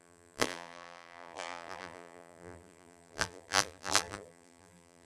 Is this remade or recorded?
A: remade